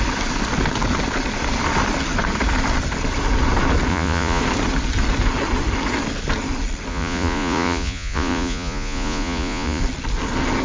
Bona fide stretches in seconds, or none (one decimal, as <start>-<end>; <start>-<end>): 0.0-3.9; 4.4-6.9; 9.8-10.6